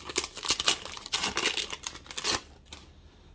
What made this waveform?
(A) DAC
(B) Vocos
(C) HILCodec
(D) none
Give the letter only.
D